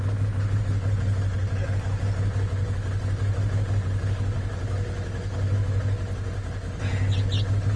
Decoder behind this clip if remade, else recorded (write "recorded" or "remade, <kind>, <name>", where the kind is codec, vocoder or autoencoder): recorded